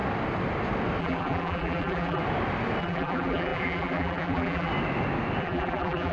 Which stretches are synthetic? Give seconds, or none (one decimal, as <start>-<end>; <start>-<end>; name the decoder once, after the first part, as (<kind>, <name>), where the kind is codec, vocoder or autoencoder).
1.0-2.2 (vocoder, BigVGAN v2); 2.8-4.7; 5.4-6.1